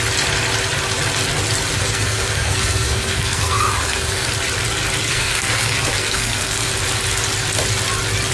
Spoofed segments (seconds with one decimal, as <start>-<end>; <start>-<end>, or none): 1.8-4.3; 5.1-6.7